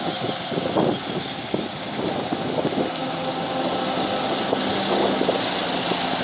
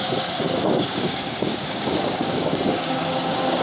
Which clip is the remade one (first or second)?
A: second